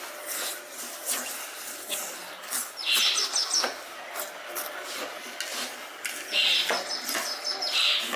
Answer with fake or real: real